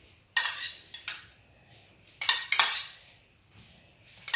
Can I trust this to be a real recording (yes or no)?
yes